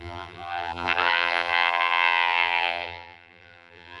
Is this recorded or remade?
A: remade